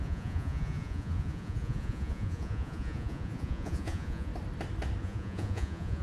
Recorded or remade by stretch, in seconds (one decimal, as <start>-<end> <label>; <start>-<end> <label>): 0.0-4.3 remade; 4.3-5.0 recorded; 5.0-6.0 remade